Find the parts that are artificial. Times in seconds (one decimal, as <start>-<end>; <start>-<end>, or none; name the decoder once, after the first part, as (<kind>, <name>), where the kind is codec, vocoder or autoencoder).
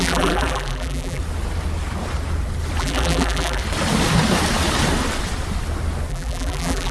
0.0-1.2 (vocoder, BigVGAN v2); 2.8-3.6; 6.1-6.9